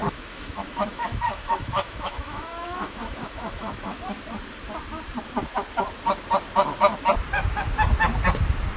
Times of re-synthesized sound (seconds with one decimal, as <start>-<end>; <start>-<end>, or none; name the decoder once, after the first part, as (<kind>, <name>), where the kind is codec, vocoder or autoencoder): 0.0-4.0 (autoencoder, DAC-VAE)